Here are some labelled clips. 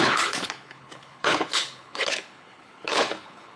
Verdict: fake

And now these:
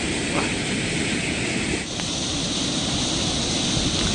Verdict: real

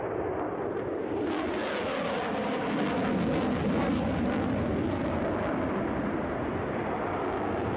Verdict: real